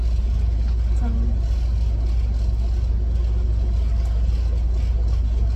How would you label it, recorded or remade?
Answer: recorded